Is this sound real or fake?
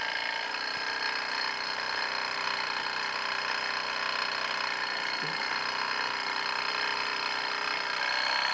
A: real